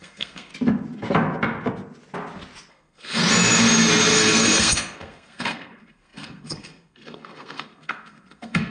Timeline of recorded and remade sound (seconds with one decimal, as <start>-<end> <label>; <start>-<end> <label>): 0.0-0.5 remade; 0.5-2.7 recorded; 2.7-3.2 remade; 3.2-4.1 recorded; 4.1-8.7 remade